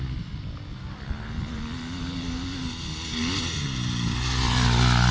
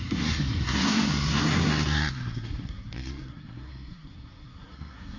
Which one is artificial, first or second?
second